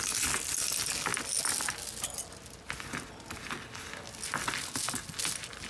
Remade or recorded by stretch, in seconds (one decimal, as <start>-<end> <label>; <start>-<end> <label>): 0.0-5.7 recorded